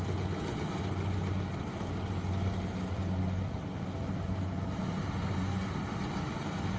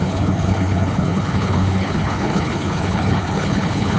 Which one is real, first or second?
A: first